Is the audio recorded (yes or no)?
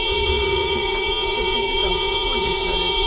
no